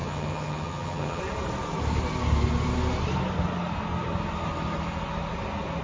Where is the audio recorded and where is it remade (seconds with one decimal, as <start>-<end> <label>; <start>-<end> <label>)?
0.0-1.2 remade; 1.2-5.8 recorded